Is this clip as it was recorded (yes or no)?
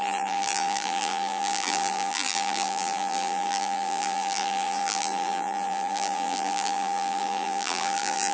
no